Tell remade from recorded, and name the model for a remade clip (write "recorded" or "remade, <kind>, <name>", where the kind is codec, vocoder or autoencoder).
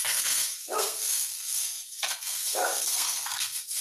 remade, codec, SNAC